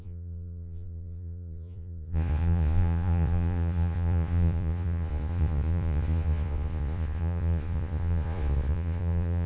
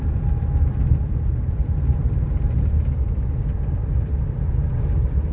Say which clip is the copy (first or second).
first